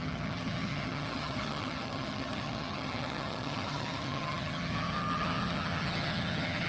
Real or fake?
fake